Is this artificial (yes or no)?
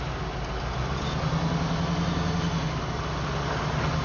no